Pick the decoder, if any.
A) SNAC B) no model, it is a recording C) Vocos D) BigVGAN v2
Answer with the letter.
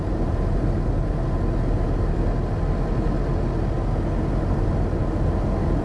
B